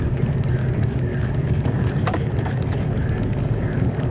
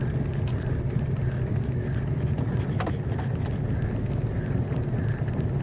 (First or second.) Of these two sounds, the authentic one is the second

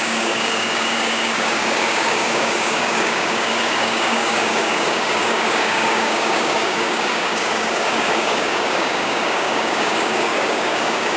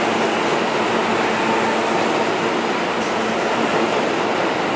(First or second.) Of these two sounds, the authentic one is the second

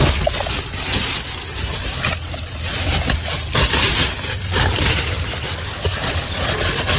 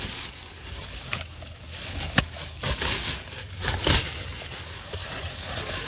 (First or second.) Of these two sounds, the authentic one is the first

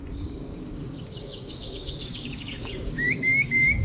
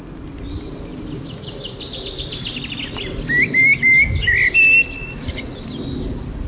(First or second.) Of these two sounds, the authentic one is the second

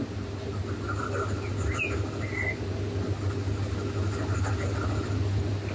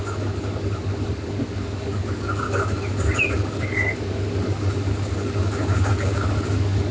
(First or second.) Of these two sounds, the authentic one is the first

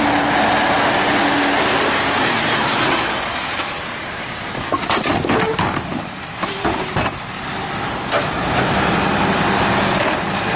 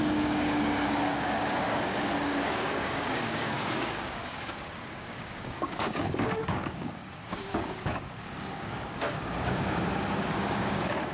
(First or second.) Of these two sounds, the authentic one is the first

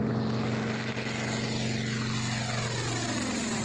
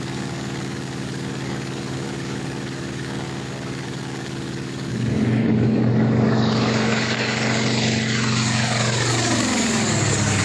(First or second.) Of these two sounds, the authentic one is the first